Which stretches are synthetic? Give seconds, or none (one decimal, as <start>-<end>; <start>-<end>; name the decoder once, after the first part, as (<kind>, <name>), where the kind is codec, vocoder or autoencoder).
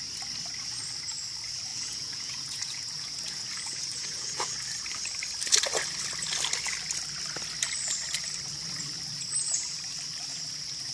1.7-4.5 (vocoder, Vocos)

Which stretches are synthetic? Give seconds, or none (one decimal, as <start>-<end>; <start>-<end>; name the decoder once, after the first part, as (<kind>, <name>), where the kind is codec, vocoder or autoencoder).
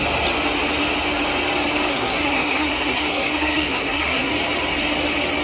1.9-4.3 (codec, SNAC)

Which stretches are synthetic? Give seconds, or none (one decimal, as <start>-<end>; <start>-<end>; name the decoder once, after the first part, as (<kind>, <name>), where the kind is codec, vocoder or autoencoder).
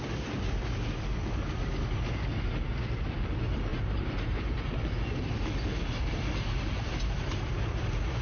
3.7-4.8 (vocoder, BigVGAN v2)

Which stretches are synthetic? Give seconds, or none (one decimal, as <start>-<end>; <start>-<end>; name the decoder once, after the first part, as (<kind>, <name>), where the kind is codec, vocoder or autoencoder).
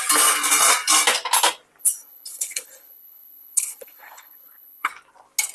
1.8-4.9 (codec, HILCodec)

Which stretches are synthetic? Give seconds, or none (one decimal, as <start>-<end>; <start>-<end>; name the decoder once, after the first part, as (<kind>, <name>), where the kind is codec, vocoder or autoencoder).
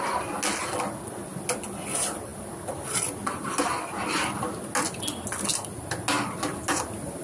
none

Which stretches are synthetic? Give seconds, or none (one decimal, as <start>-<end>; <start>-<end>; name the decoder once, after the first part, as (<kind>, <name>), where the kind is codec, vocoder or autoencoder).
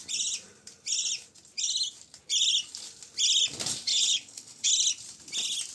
3.9-4.7 (codec, HILCodec)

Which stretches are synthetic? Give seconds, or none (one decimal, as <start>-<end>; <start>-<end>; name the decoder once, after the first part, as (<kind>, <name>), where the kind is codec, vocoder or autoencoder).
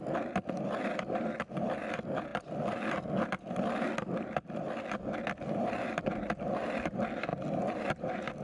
2.3-6.0 (vocoder, BigVGAN v2)